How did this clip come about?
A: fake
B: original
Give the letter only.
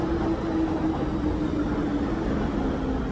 B